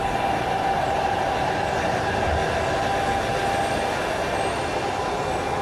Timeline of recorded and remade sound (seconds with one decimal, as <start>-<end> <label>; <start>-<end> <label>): 0.0-5.6 recorded